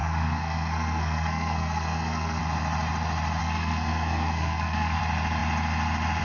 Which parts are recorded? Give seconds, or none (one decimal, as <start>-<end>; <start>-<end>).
2.4-3.4; 5.0-6.2